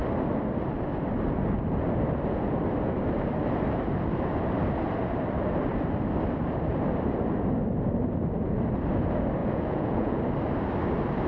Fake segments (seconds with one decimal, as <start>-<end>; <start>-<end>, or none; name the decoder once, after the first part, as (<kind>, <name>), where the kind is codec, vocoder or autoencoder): 9.4-10.2 (vocoder, Vocos)